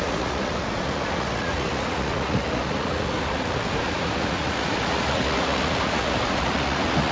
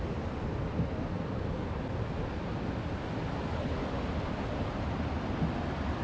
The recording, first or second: second